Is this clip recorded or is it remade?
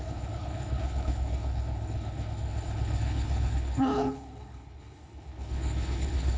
remade